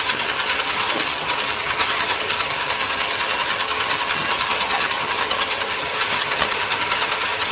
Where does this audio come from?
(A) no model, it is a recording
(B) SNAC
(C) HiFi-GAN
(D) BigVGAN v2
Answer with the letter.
C